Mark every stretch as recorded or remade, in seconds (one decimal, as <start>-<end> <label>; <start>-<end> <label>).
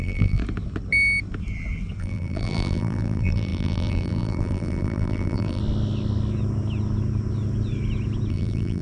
0.0-0.4 remade; 0.4-2.0 recorded; 2.0-5.6 remade; 5.6-8.3 recorded; 8.3-8.8 remade